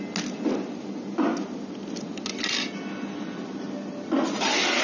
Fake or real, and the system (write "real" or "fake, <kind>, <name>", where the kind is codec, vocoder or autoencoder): real